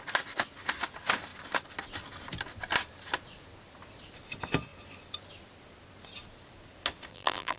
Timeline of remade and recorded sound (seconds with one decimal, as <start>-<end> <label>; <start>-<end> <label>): 0.0-7.1 recorded; 7.1-7.6 remade